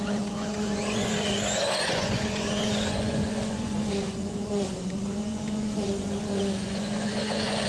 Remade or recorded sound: remade